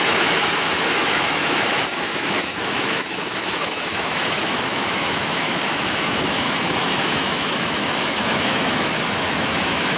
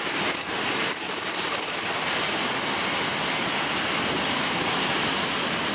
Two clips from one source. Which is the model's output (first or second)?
first